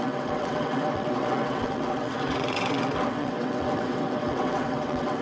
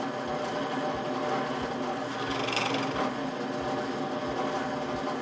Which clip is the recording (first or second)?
second